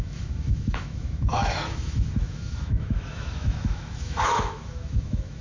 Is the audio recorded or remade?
remade